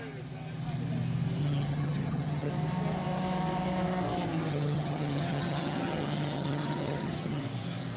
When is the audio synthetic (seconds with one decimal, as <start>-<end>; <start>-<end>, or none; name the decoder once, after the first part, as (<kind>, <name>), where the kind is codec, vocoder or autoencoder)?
1.4-2.5 (vocoder, HiFi-GAN); 4.5-7.4